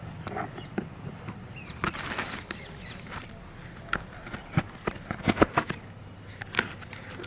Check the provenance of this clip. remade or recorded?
recorded